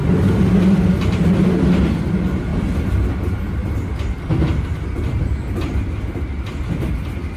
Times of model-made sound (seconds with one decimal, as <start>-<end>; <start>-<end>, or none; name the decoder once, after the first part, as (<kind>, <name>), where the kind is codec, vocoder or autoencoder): none